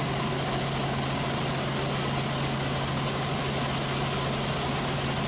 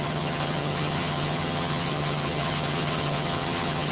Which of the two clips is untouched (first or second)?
first